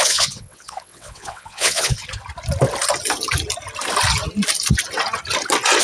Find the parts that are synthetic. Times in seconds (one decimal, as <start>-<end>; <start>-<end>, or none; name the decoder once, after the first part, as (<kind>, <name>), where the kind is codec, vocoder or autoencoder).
0.0-2.0 (vocoder, WaveNeXt)